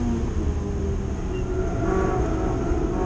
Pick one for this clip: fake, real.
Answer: real